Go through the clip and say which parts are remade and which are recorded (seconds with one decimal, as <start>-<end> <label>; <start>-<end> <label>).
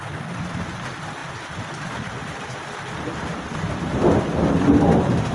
0.0-5.3 remade